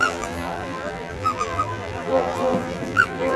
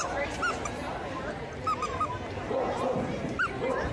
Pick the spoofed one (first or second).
first